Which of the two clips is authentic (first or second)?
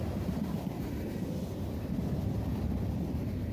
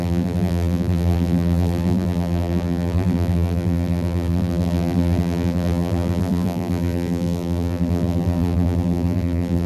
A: first